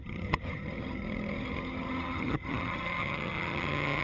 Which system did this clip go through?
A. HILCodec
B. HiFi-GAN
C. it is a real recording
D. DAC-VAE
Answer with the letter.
B